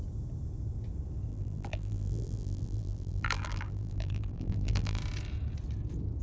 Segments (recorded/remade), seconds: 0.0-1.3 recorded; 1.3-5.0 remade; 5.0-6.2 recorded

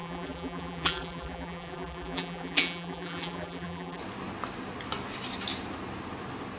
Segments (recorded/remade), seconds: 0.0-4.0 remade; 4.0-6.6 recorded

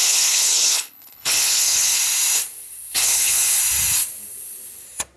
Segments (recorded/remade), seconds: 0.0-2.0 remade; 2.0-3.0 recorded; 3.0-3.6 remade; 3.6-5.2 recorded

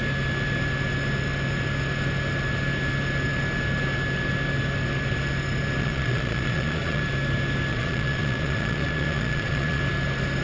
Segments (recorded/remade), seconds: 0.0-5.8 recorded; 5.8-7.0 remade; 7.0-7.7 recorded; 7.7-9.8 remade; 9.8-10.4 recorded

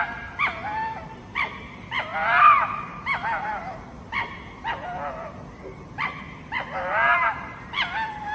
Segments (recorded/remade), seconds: 0.0-8.3 recorded

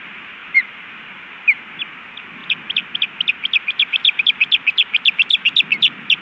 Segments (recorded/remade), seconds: 0.0-0.4 recorded; 0.4-1.7 remade; 1.7-6.2 recorded